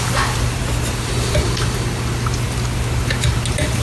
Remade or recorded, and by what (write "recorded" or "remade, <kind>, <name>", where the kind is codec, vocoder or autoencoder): recorded